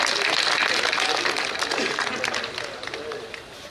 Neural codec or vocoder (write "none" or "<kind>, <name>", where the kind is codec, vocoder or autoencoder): none